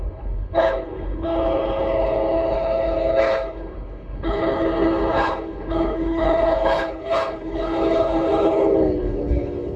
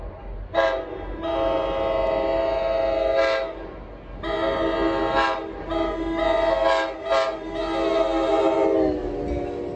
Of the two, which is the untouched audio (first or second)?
second